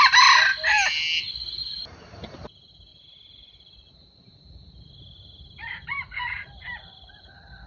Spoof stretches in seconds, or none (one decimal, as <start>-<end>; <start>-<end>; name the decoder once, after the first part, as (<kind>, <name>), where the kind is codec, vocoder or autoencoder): 1.6-2.2 (vocoder, BigVGAN v2); 2.9-7.2